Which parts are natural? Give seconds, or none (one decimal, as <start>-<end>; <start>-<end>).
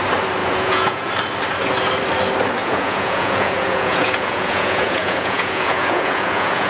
0.0-0.4; 1.1-2.6